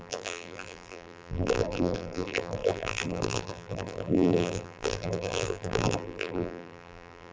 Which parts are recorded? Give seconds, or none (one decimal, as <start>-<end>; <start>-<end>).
none